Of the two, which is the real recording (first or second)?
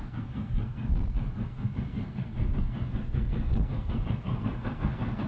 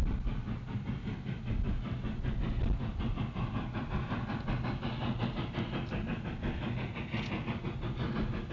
second